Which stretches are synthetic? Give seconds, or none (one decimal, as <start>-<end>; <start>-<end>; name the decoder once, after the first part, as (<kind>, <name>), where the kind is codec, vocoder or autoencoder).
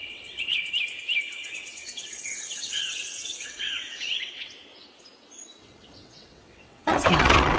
0.0-0.7 (vocoder, WaveNeXt); 1.4-4.5; 5.6-7.6